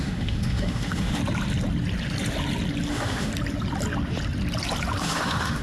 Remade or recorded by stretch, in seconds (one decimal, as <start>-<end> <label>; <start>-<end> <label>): 0.0-1.2 remade; 1.2-2.9 recorded; 2.9-3.3 remade; 3.3-5.0 recorded; 5.0-5.6 remade

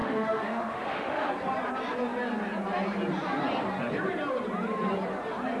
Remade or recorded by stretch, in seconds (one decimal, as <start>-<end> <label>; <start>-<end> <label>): 0.0-1.3 remade; 1.3-5.6 recorded

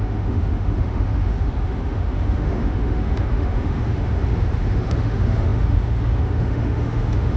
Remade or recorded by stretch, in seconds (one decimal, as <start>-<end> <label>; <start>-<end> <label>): 0.0-7.4 remade

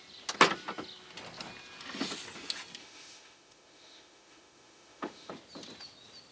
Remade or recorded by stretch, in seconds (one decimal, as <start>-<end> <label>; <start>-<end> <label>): 0.0-2.8 recorded; 2.8-5.3 remade; 5.3-6.3 recorded